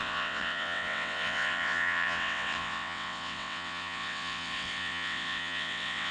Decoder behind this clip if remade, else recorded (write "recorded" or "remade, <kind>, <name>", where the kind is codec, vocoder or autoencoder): remade, vocoder, WaveNeXt